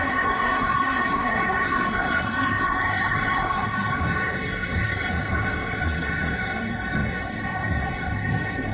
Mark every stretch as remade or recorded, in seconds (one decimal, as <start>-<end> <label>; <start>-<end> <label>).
0.0-8.7 remade